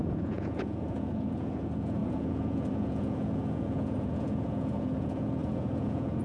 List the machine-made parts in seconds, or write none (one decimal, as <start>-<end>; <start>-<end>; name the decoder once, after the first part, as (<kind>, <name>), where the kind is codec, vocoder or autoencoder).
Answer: 0.0-6.2 (vocoder, Vocos)